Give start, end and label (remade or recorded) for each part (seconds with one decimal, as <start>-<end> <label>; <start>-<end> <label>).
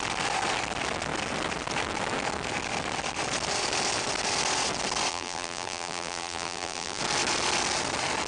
0.0-5.1 recorded; 5.1-7.0 remade; 7.0-8.3 recorded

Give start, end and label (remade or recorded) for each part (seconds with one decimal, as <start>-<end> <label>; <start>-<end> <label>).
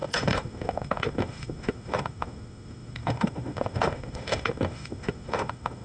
0.0-5.8 remade